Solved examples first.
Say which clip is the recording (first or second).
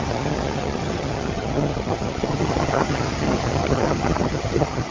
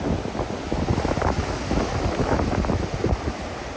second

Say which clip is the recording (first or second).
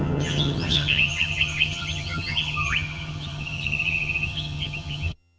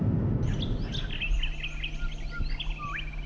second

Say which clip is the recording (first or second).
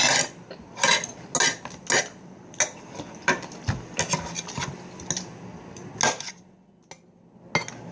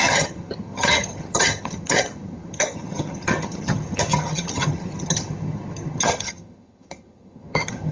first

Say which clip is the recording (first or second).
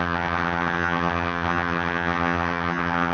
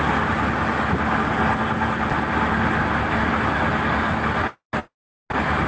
second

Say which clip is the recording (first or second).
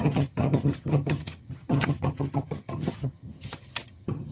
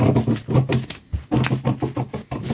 second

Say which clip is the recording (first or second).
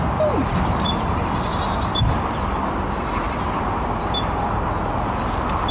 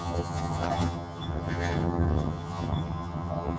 first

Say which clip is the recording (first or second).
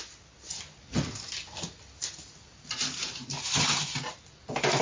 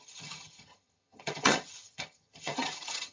first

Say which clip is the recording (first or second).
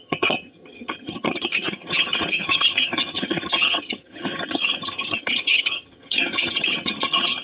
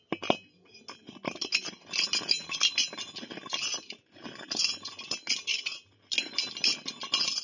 second